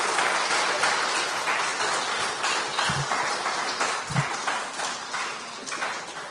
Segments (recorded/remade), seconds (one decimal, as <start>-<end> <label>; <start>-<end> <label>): 0.0-6.3 recorded